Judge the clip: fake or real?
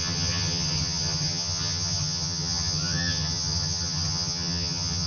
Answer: fake